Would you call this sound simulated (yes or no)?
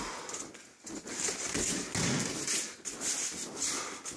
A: no